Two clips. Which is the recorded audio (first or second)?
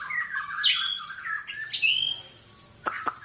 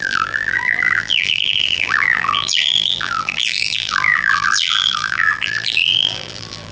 first